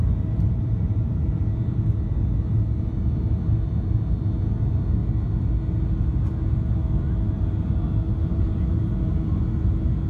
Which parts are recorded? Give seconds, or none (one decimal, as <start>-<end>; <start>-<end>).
1.4-8.2; 9.4-10.1